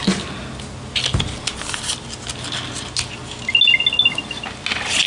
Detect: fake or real real